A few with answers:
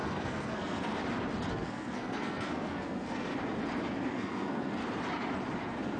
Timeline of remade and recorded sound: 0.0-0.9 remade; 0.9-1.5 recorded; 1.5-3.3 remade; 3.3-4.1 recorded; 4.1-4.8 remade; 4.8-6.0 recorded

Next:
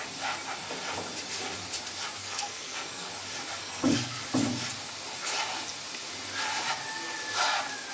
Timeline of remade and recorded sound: 0.0-2.2 recorded; 2.2-3.1 remade; 3.1-3.6 recorded; 3.6-4.2 remade; 4.2-7.9 recorded

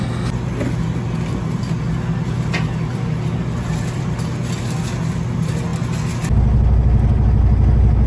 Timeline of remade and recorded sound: 0.0-8.1 recorded

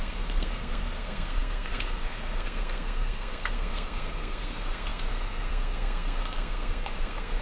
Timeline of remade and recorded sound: 0.0-7.4 remade

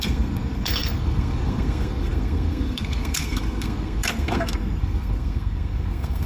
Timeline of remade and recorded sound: 0.0-6.3 remade

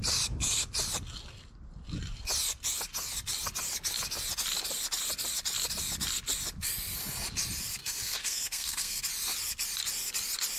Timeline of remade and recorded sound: 0.0-7.8 recorded; 7.8-9.0 remade; 9.0-10.6 recorded

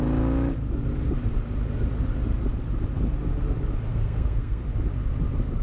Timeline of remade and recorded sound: 0.0-3.9 recorded; 3.9-4.6 remade; 4.6-5.6 recorded